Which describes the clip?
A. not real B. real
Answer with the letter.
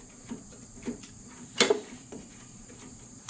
A